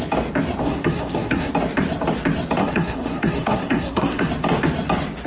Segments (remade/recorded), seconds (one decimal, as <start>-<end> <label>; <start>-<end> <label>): 0.0-0.6 recorded; 0.6-1.5 remade; 1.5-2.6 recorded; 2.6-4.3 remade; 4.3-5.3 recorded